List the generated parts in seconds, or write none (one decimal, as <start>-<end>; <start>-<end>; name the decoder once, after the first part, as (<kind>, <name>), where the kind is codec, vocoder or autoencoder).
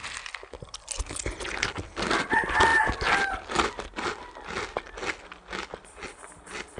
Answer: none